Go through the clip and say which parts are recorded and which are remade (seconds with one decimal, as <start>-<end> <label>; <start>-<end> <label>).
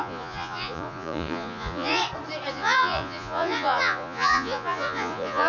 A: 0.0-2.0 remade; 2.0-2.5 recorded; 2.5-5.5 remade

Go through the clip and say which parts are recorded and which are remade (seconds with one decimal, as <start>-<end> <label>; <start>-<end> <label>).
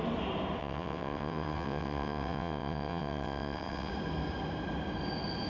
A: 0.0-0.6 recorded; 0.6-3.9 remade; 3.9-5.5 recorded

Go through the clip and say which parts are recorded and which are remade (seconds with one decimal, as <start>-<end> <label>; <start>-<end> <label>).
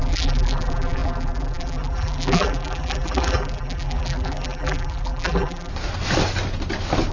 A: 0.0-5.7 remade; 5.7-7.1 recorded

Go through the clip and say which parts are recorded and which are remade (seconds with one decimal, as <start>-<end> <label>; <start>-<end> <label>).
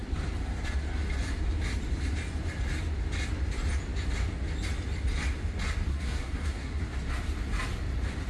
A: 0.0-5.9 recorded; 5.9-6.8 remade; 6.8-8.3 recorded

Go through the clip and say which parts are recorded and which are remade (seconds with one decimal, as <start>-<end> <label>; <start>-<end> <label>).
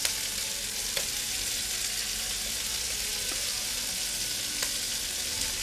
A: 0.0-5.6 recorded